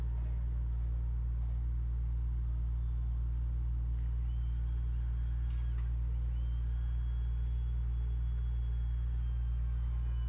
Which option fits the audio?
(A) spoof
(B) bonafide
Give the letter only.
B